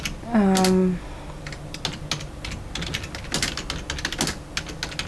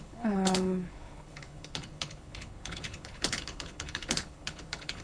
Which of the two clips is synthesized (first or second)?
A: second